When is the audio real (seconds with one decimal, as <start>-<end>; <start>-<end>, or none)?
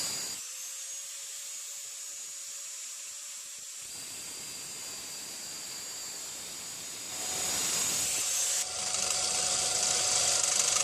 0.0-10.8